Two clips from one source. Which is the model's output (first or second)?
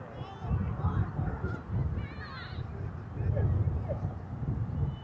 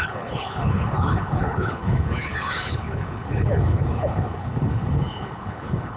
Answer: second